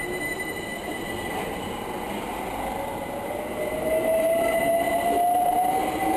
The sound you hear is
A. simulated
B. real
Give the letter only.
A